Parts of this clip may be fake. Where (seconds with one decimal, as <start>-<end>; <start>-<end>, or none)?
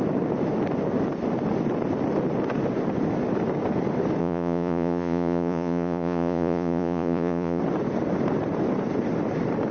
4.2-7.6